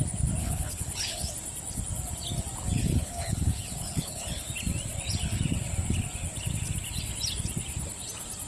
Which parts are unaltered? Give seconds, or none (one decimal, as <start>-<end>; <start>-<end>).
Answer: 0.0-0.4; 1.3-2.8; 4.5-8.5